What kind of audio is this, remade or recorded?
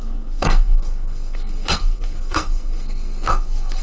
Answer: remade